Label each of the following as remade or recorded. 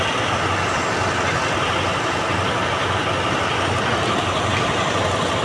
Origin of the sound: recorded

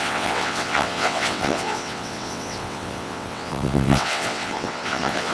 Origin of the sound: remade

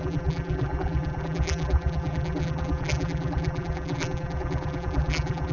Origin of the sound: remade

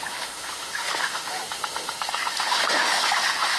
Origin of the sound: remade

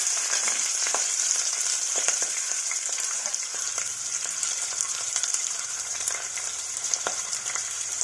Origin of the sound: remade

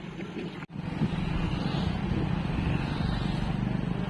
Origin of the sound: recorded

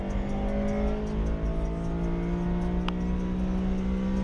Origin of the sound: recorded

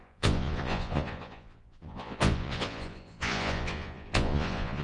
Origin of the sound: remade